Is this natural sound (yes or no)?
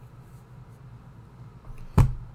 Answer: yes